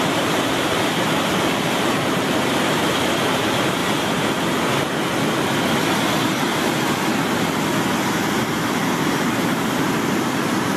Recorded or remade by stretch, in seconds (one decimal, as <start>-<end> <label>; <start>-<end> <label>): 0.0-3.8 remade; 3.8-8.0 recorded; 8.0-10.8 remade